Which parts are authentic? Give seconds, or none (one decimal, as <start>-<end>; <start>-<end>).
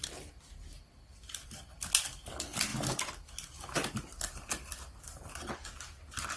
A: 0.0-6.4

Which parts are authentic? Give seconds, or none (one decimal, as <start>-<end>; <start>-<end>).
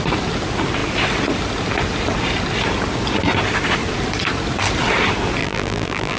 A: 0.0-5.4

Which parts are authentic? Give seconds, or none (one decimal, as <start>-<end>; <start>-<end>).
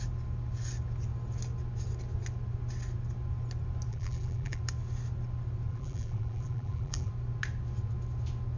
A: 0.0-3.9; 4.6-5.7; 7.1-8.6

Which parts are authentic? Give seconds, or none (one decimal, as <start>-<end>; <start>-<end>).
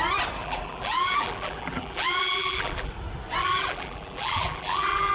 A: 0.0-0.4; 2.9-3.4